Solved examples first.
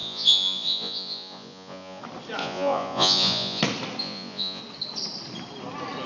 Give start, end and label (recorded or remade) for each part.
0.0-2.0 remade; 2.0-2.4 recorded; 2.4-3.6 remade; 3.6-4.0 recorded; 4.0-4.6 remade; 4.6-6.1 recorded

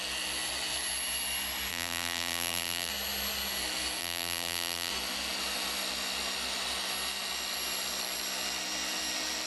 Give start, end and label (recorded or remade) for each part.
0.0-1.7 recorded; 1.7-2.9 remade; 2.9-4.0 recorded; 4.0-4.9 remade; 4.9-9.5 recorded

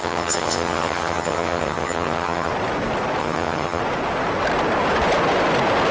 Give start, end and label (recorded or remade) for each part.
0.0-2.5 remade; 2.5-3.2 recorded; 3.2-3.8 remade; 3.8-5.9 recorded

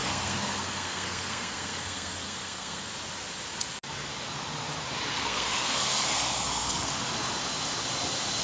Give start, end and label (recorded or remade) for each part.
0.0-2.9 remade; 2.9-5.1 recorded; 5.1-6.9 remade; 6.9-8.4 recorded

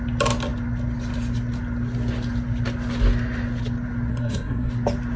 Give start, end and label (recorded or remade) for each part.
0.0-4.1 recorded; 4.1-4.7 remade; 4.7-5.2 recorded

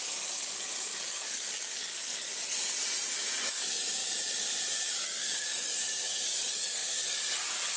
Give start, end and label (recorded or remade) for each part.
0.0-2.3 remade; 2.3-3.5 recorded; 3.5-4.0 remade; 4.0-4.7 recorded; 4.7-7.8 remade

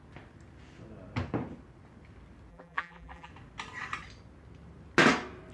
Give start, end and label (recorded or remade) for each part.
0.0-2.5 recorded; 2.5-3.3 remade; 3.3-5.5 recorded

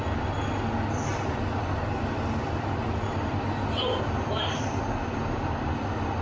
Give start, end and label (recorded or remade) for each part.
0.0-1.1 recorded; 1.1-4.8 remade; 4.8-6.2 recorded